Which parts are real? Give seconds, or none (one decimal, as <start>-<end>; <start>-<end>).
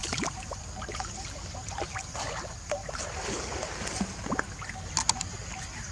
0.6-2.8; 3.4-5.9